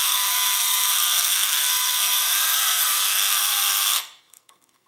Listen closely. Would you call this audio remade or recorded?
remade